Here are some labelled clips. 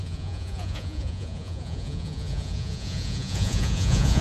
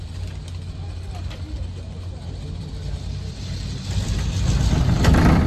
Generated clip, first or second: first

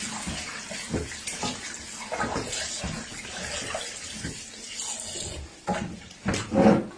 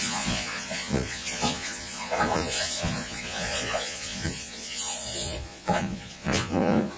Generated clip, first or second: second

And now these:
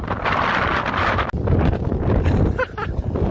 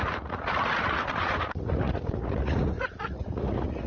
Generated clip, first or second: second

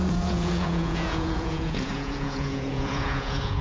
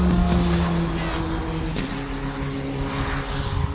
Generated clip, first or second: first